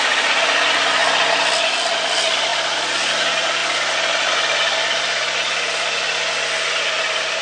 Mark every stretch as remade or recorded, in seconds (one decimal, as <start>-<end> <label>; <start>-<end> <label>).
0.0-7.4 recorded